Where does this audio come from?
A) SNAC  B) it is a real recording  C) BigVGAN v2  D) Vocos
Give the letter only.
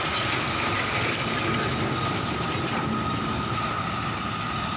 B